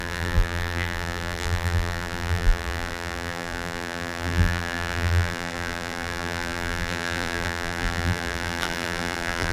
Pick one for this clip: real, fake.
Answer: fake